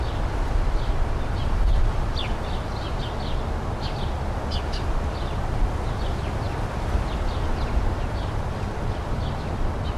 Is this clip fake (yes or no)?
no